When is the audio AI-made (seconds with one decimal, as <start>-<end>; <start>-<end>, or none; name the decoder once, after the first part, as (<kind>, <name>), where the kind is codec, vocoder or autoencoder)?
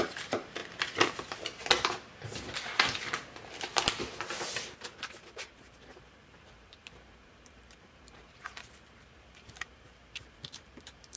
0.0-0.6 (vocoder, BigVGAN v2); 5.1-11.2